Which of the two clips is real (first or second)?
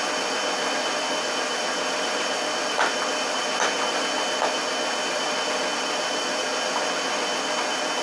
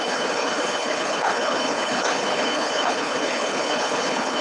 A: first